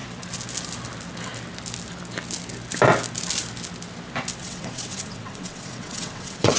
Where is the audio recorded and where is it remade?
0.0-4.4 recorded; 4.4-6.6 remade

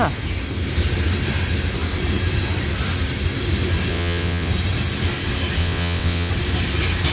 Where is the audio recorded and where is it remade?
0.0-3.9 recorded; 3.9-4.5 remade; 4.5-5.6 recorded; 5.6-6.3 remade; 6.3-7.1 recorded

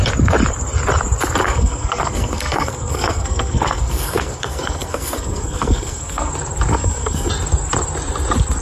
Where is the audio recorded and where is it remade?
0.0-1.4 recorded; 1.4-6.3 remade; 6.3-6.7 recorded; 6.7-7.3 remade; 7.3-8.6 recorded

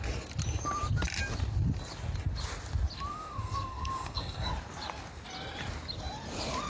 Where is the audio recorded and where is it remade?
0.0-3.1 recorded; 3.1-4.5 remade; 4.5-6.7 recorded

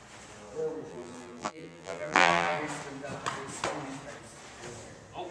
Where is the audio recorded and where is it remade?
0.0-0.9 recorded; 0.9-2.6 remade; 2.6-5.3 recorded

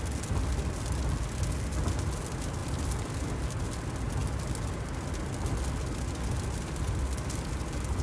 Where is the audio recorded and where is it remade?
0.0-2.6 recorded; 2.6-3.1 remade; 3.1-8.0 recorded

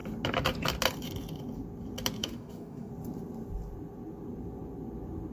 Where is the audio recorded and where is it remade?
0.0-2.2 recorded; 2.2-2.9 remade; 2.9-5.3 recorded